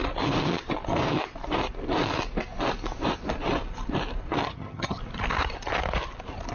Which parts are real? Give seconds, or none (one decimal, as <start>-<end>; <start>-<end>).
0.0-4.4; 5.0-6.5